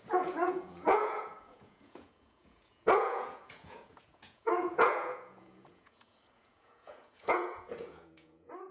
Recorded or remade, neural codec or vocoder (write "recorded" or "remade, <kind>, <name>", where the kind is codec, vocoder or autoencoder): remade, vocoder, Vocos